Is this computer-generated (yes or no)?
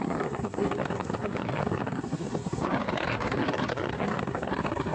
yes